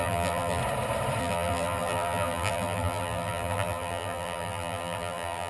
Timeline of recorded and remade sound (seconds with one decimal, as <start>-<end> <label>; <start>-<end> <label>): 0.0-0.6 remade; 0.6-1.2 recorded; 1.2-5.5 remade